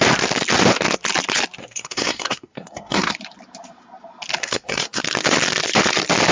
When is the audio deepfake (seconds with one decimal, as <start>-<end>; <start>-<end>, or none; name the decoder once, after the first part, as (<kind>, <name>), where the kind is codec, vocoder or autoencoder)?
1.6-3.1 (codec, SNAC); 4.4-5.0